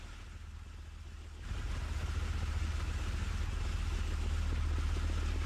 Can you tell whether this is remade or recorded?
recorded